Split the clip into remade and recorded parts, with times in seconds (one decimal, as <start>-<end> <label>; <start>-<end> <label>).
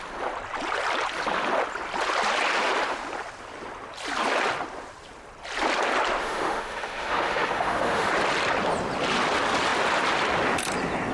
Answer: 0.0-6.2 recorded; 6.2-8.1 remade; 8.1-11.1 recorded